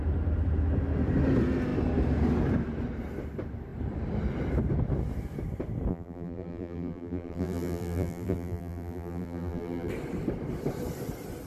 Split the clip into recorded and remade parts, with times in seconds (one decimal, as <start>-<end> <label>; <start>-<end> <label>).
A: 0.0-5.9 recorded; 5.9-9.9 remade; 9.9-11.5 recorded